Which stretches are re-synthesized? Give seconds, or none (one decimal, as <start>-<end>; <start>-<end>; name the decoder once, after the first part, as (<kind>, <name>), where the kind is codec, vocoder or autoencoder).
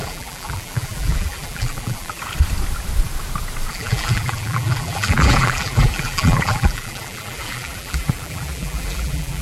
0.0-2.2 (vocoder, BigVGAN v2); 3.7-9.4